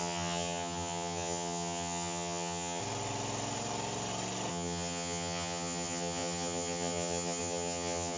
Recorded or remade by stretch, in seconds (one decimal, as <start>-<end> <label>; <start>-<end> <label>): 0.0-2.8 remade; 2.8-4.5 recorded; 4.5-8.2 remade